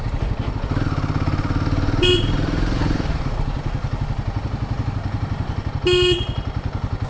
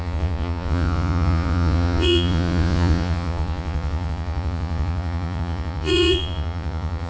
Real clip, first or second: first